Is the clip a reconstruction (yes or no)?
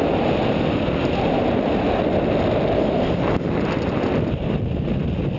no